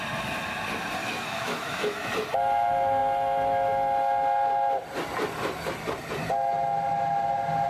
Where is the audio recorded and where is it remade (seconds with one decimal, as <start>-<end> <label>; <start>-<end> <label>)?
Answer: 0.0-1.0 recorded; 1.0-2.1 remade; 2.1-7.7 recorded